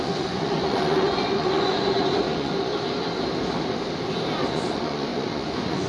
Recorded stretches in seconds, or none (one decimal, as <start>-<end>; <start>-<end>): 2.7-4.4